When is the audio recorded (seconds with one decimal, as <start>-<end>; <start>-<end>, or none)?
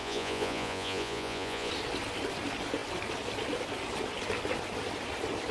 1.7-5.5